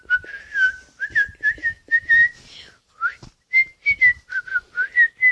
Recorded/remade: recorded